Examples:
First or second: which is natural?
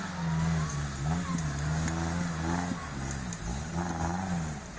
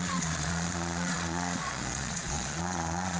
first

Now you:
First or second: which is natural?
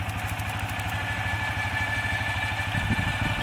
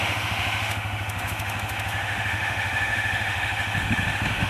first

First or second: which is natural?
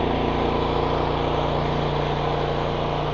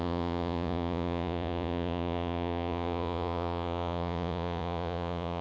first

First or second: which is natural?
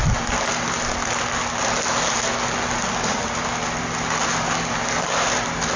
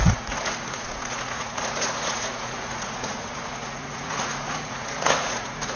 first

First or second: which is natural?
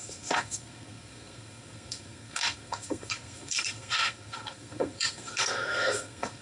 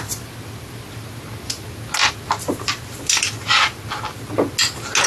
second